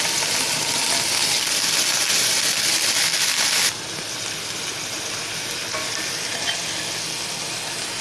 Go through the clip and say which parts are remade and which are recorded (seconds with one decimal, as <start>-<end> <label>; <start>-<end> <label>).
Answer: 0.0-8.0 recorded